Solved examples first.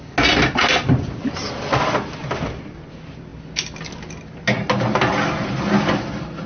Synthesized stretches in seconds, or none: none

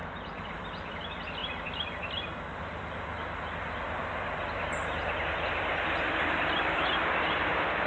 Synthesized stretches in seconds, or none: none